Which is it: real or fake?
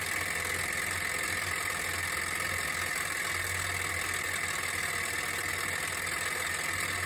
real